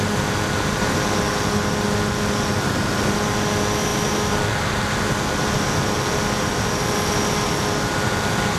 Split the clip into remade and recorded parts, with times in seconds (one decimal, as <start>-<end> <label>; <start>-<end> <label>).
0.0-8.6 recorded